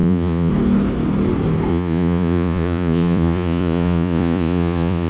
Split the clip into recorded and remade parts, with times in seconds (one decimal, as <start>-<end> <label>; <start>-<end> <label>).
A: 0.0-0.5 remade; 0.5-1.7 recorded; 1.7-5.1 remade